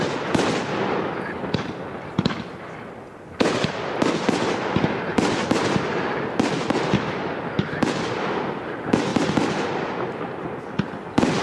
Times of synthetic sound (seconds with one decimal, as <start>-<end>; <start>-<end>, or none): none